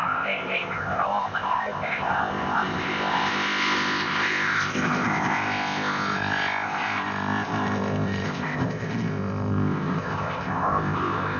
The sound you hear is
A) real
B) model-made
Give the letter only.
B